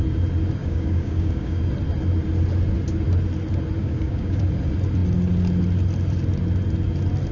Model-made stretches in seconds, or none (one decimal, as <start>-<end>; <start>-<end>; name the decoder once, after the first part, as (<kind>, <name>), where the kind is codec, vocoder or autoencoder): 0.6-1.6 (codec, DAC); 3.8-4.4